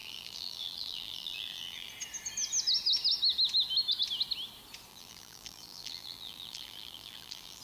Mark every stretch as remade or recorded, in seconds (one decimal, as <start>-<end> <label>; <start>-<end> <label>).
0.0-1.9 remade; 1.9-4.9 recorded; 4.9-7.6 remade